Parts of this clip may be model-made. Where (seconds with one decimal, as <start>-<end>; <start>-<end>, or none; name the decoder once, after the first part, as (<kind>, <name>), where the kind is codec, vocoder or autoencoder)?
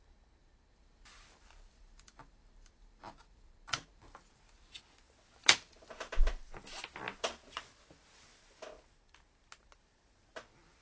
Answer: 0.4-4.7 (vocoder, BigVGAN v2); 5.4-6.2